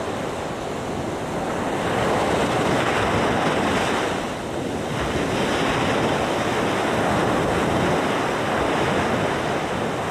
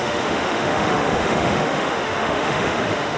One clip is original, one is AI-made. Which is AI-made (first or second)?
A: second